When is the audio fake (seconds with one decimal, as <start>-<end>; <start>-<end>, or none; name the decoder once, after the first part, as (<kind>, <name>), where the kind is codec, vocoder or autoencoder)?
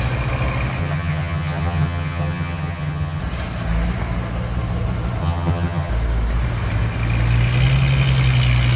0.8-3.2 (vocoder, HiFi-GAN); 5.2-5.9